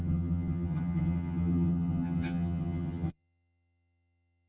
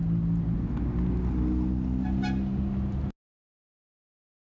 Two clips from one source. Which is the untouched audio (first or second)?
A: second